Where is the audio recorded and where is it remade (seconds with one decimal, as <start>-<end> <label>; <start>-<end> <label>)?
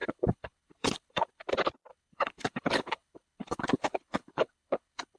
0.0-1.5 remade; 1.5-1.9 recorded; 1.9-5.2 remade